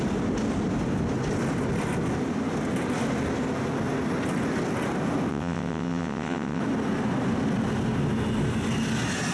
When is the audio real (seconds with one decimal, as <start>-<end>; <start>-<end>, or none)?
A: 0.0-5.3; 6.6-9.3